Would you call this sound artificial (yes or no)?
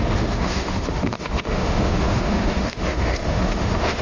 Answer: yes